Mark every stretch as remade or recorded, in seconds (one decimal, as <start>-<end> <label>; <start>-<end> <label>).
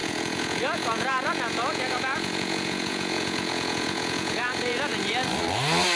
0.0-4.9 remade; 4.9-6.0 recorded